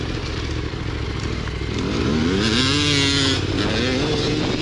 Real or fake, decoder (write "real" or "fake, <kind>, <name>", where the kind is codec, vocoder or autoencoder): real